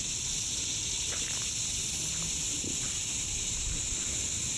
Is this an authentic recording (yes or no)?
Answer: yes